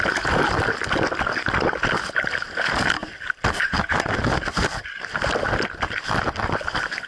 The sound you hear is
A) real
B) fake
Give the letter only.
A